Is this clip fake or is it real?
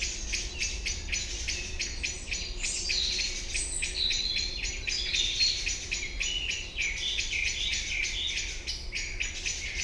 real